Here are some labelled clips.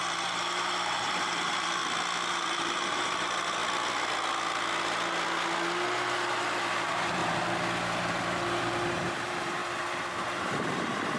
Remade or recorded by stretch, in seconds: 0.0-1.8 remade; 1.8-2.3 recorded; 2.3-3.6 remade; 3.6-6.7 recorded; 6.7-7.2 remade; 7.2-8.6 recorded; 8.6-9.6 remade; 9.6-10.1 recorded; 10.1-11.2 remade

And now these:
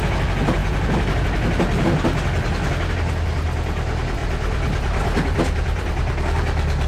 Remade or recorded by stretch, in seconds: 0.0-4.2 recorded; 4.2-6.2 remade; 6.2-6.9 recorded